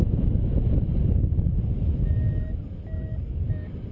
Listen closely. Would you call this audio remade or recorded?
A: recorded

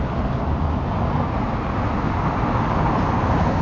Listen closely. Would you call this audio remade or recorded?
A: recorded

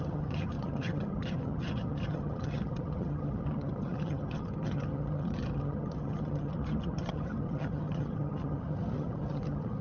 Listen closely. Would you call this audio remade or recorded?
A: remade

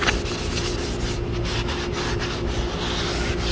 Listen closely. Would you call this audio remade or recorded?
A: recorded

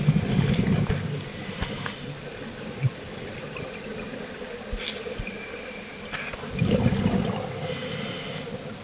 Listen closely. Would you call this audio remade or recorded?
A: recorded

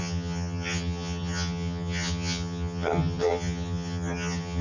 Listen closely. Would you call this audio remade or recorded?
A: remade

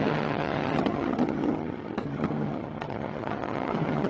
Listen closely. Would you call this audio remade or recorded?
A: remade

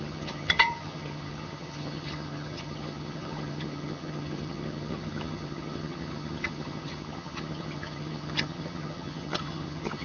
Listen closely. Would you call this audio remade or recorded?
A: remade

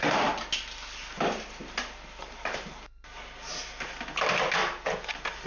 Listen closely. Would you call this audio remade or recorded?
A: recorded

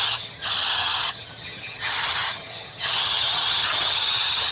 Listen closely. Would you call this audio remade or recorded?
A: remade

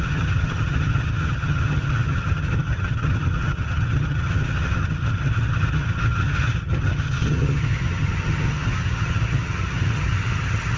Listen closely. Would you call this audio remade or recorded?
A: remade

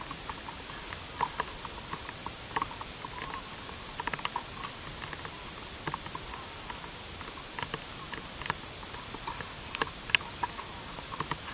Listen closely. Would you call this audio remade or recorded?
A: recorded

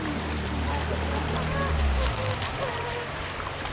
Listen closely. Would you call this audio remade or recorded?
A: recorded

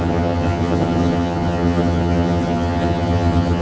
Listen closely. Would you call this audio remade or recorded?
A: remade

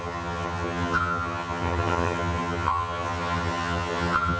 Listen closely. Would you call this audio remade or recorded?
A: remade